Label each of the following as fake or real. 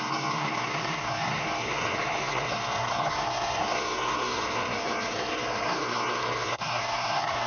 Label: fake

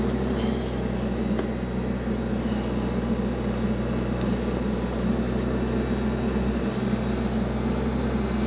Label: real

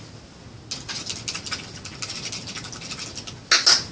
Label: real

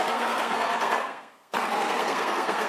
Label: fake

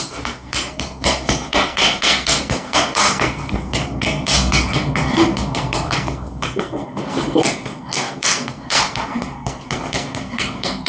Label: fake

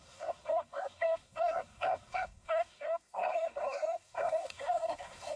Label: fake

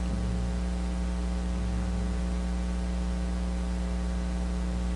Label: real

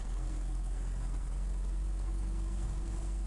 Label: fake